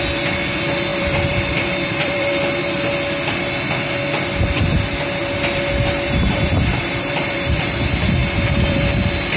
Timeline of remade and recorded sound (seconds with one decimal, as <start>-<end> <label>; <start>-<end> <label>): 0.0-0.9 recorded; 0.9-2.6 remade; 2.6-5.2 recorded; 5.2-7.6 remade; 7.6-8.2 recorded; 8.2-9.4 remade